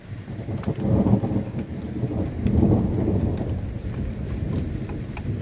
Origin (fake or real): real